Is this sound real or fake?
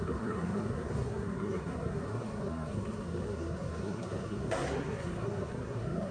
fake